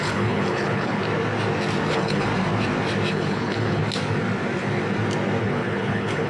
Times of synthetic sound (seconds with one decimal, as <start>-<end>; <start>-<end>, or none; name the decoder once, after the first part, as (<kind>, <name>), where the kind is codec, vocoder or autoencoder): 0.0-1.0 (codec, HILCodec); 1.9-2.3; 3.1-3.8; 5.4-6.3